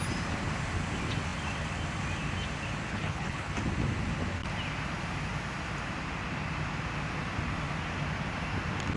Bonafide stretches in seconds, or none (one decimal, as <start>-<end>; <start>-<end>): 0.0-2.9; 3.5-9.0